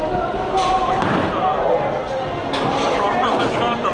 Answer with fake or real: real